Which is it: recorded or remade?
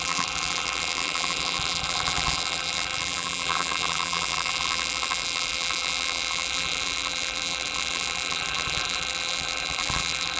remade